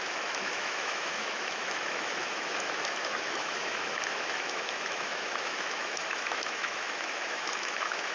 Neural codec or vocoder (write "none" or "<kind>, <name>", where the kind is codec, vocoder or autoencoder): autoencoder, DAC-VAE